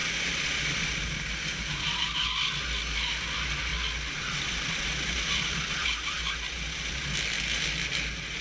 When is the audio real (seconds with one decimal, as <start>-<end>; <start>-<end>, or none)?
0.0-8.4